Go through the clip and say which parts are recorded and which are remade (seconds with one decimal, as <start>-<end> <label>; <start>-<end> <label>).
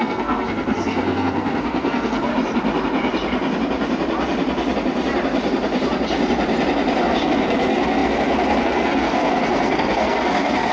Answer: 0.0-2.3 remade; 2.3-7.1 recorded; 7.1-10.7 remade